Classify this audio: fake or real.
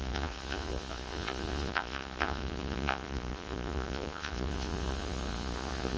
fake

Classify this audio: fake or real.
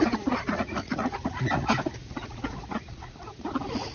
fake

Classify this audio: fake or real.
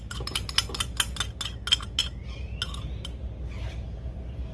real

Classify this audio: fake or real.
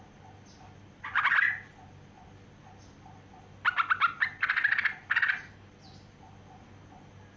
real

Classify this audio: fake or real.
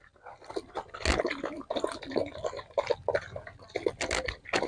real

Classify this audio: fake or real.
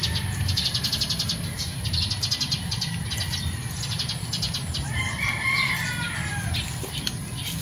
real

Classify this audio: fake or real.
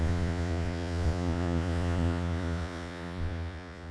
fake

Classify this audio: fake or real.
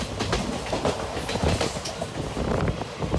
real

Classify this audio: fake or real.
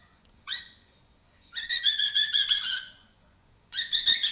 fake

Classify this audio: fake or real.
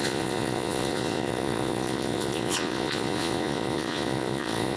fake